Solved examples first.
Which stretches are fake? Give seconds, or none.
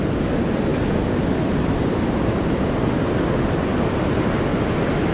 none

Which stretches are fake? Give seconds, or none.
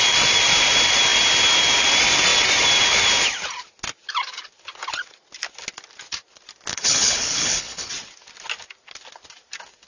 6.7-7.9 (codec, HILCodec)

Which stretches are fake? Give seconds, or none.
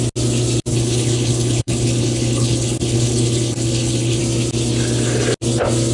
0.7-4.2 (codec, HILCodec)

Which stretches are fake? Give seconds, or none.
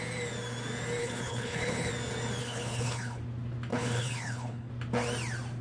1.0-1.9 (codec, HILCodec); 2.4-3.2; 3.7-4.7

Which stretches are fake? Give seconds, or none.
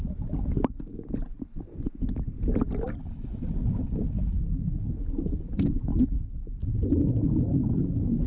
3.0-4.4 (codec, HILCodec)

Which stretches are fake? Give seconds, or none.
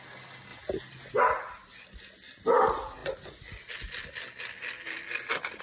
none